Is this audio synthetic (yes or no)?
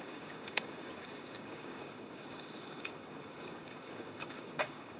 yes